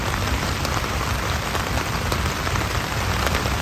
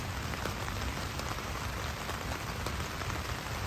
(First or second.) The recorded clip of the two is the second